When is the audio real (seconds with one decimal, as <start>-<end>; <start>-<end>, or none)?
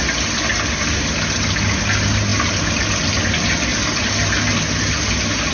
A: 0.0-5.5